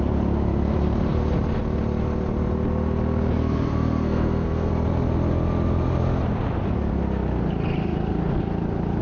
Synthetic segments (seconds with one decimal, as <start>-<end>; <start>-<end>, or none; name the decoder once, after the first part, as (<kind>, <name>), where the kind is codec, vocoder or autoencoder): 3.7-4.7 (codec, SNAC)